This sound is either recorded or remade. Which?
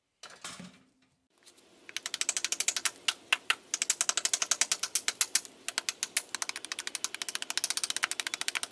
recorded